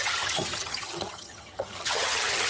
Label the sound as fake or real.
fake